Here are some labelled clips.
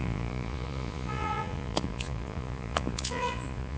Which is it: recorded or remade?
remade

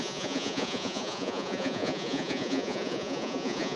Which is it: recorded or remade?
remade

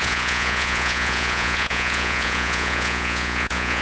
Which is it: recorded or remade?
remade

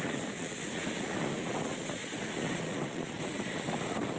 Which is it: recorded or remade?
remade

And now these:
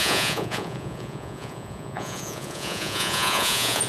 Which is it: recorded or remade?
remade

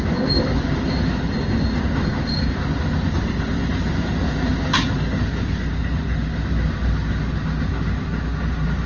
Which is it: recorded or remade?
recorded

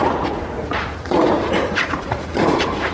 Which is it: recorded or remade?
remade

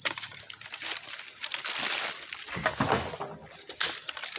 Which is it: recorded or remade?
recorded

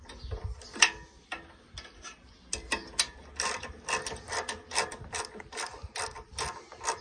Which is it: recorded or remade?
recorded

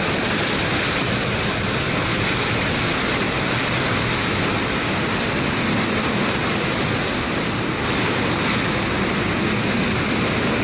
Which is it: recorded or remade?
recorded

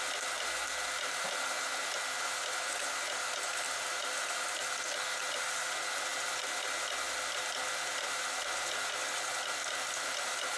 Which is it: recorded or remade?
recorded